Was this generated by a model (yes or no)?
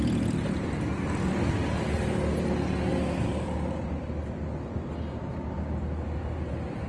no